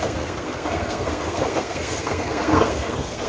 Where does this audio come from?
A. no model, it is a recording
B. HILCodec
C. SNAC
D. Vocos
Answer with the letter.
C